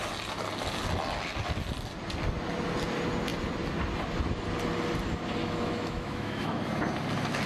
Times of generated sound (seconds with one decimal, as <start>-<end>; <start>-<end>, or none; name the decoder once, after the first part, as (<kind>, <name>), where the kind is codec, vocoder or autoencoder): 5.4-6.6 (autoencoder, DAC-VAE)